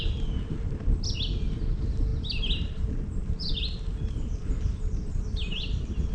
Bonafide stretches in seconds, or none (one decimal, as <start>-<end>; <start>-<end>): 0.0-6.1